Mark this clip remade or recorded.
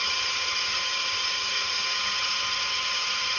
remade